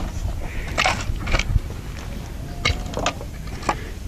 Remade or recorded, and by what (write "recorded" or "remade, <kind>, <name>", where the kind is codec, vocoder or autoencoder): recorded